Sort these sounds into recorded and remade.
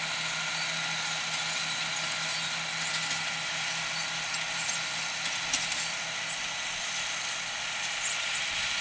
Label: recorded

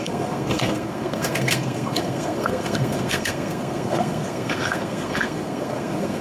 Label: remade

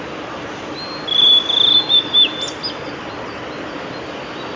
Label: recorded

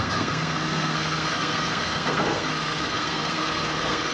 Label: remade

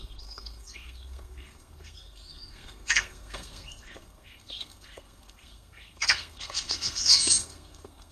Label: remade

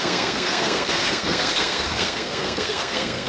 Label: remade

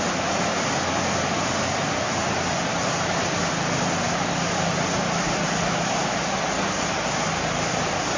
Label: recorded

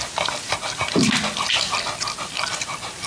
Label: recorded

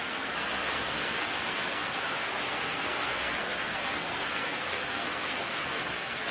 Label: remade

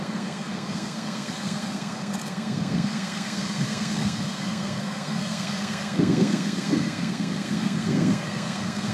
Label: remade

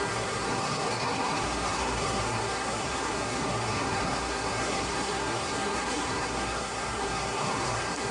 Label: remade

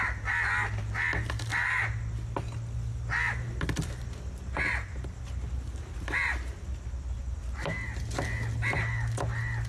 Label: recorded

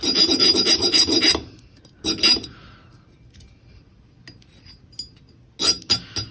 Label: recorded